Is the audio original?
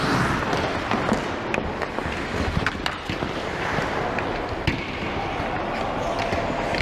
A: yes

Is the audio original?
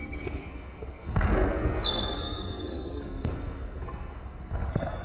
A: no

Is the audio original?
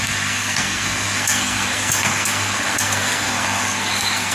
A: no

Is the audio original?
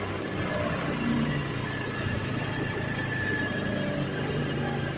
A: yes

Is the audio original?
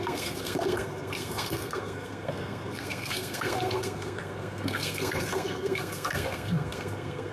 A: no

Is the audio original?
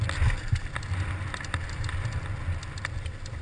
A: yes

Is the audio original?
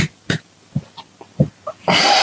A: yes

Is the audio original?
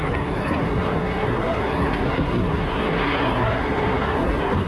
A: no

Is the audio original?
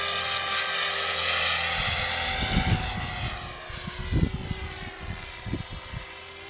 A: yes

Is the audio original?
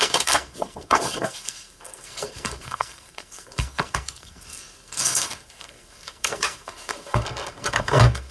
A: no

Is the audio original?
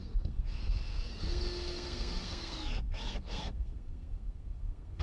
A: no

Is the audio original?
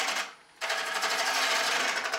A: yes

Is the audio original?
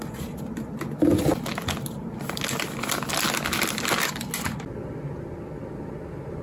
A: yes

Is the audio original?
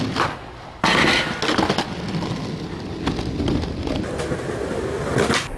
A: yes